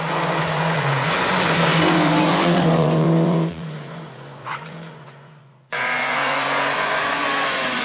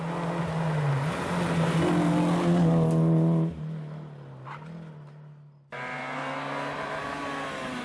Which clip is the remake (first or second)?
first